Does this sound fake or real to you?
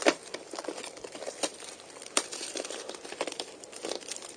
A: fake